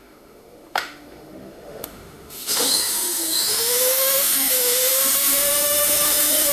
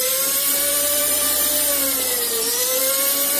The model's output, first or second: first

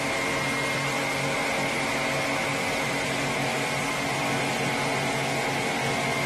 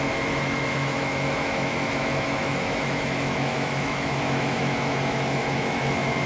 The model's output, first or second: second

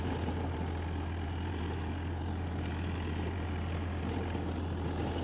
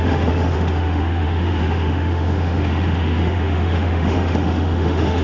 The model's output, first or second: second